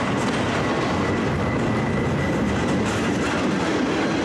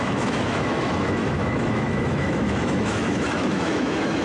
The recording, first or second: first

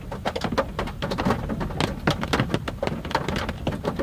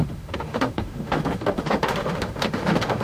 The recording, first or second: first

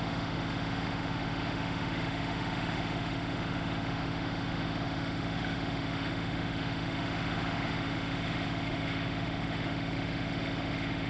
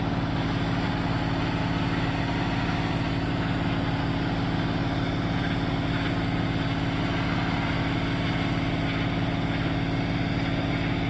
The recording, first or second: second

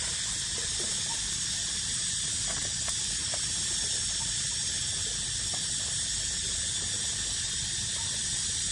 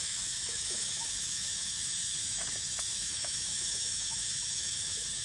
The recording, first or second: first